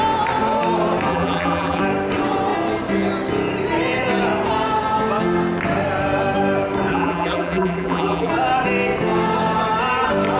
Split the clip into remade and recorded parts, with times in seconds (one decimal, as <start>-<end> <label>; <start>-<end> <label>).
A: 0.0-1.1 recorded; 1.1-1.8 remade; 1.8-6.9 recorded; 6.9-8.3 remade; 8.3-10.4 recorded